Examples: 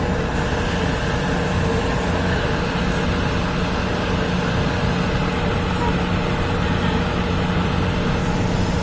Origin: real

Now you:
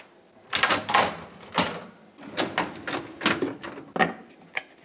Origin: real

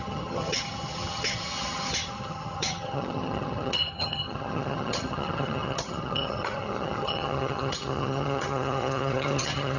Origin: fake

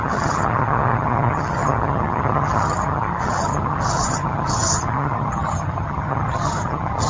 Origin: fake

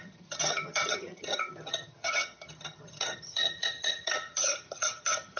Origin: fake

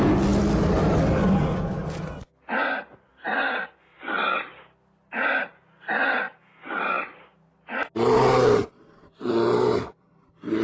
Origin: real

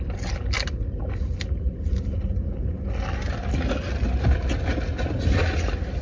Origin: real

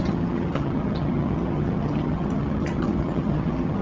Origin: fake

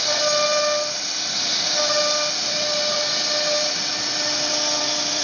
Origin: real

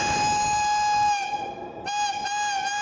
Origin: real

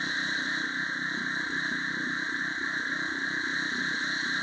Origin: real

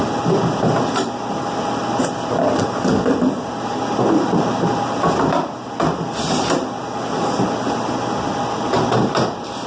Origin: real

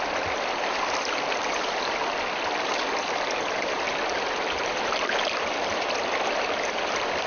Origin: real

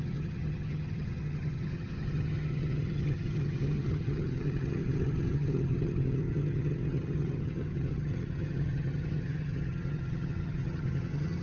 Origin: fake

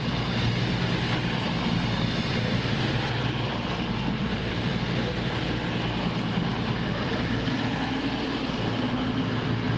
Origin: real